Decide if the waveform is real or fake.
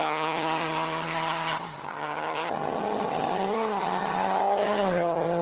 fake